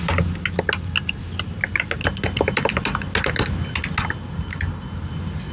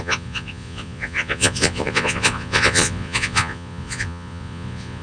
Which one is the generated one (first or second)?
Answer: second